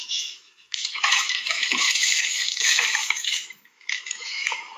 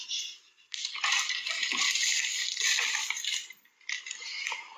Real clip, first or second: second